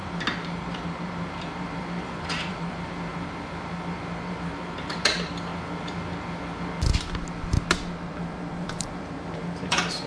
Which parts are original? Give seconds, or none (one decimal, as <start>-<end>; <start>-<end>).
3.1-4.3; 5.5-8.1